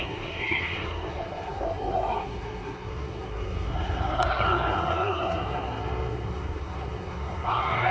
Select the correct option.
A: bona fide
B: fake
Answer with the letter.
B